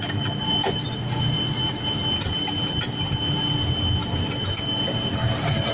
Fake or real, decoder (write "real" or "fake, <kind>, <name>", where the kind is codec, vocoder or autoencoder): real